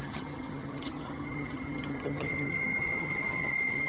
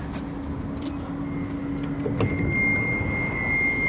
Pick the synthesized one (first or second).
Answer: first